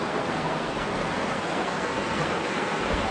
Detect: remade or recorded remade